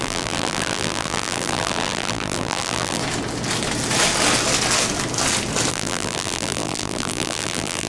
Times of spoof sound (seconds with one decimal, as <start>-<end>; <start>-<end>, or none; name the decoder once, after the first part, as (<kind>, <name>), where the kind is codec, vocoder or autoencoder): 0.0-3.0 (vocoder, BigVGAN v2); 5.7-7.9